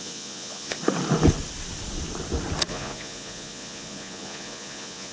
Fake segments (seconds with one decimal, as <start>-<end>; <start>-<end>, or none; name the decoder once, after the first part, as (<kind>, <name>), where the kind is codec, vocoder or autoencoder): 0.0-0.8 (vocoder, Vocos); 2.7-5.1